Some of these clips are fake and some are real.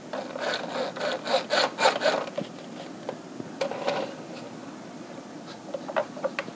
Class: real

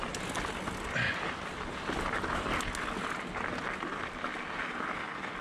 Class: real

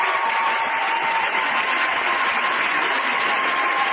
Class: fake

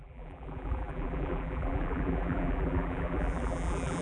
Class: fake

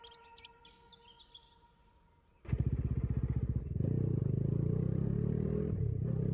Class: real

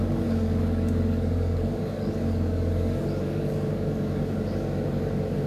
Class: fake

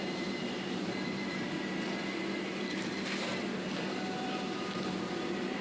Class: fake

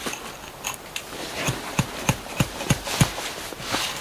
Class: real